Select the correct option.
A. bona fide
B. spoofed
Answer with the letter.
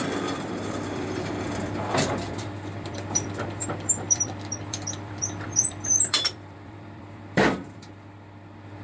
B